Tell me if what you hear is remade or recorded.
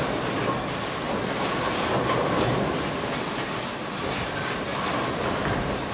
recorded